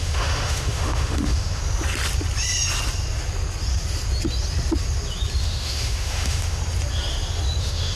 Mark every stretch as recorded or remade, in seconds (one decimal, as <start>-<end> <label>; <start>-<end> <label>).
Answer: 0.0-1.6 remade; 1.6-5.4 recorded; 5.4-6.6 remade; 6.6-7.6 recorded; 7.6-8.0 remade